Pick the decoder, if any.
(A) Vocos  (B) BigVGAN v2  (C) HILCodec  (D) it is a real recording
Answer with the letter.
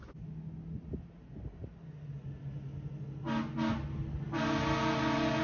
D